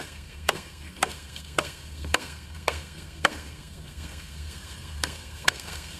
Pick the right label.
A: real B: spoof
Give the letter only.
B